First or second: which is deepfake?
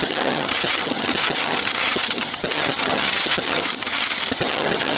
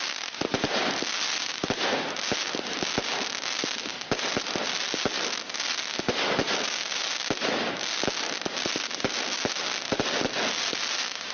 first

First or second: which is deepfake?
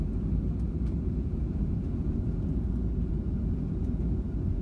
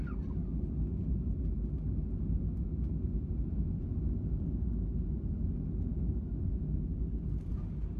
first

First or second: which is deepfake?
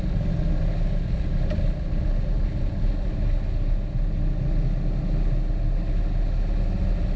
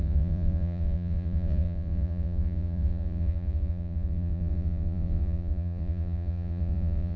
second